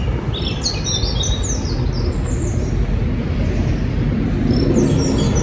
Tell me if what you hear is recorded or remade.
recorded